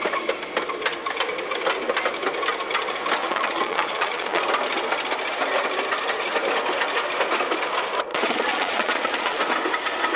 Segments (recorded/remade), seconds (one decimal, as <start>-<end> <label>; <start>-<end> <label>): 0.0-3.2 recorded; 3.2-4.4 remade; 4.4-8.1 recorded; 8.1-9.4 remade; 9.4-10.2 recorded